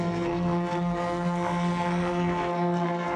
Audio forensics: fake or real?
fake